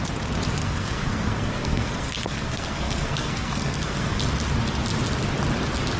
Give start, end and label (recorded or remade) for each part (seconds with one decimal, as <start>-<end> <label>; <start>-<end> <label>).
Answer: 0.0-0.6 recorded; 0.6-4.2 remade; 4.2-6.0 recorded